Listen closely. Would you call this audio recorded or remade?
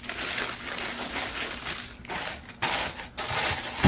recorded